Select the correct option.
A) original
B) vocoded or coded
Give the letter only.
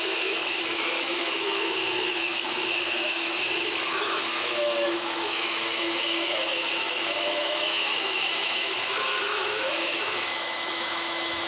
B